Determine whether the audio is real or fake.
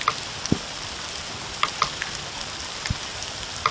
real